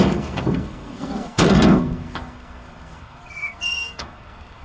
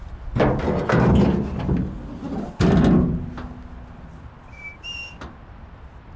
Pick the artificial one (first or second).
first